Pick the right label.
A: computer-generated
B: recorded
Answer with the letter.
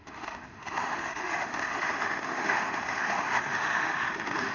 A